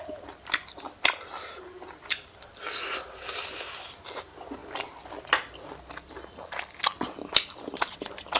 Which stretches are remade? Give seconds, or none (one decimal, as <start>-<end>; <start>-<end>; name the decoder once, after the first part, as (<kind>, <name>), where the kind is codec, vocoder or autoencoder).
none